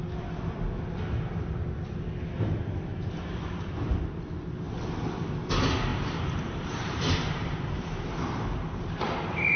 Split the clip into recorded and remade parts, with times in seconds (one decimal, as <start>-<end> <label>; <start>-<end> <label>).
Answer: 0.0-2.9 recorded; 2.9-4.1 remade; 4.1-5.9 recorded; 5.9-9.6 remade